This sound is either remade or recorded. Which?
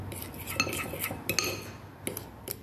recorded